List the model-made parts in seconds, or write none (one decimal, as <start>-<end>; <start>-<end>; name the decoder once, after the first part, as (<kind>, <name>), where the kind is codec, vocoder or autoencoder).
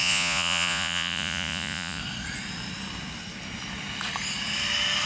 0.0-2.0 (vocoder, Vocos)